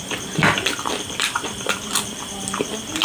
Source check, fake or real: fake